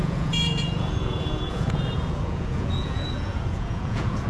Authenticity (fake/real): fake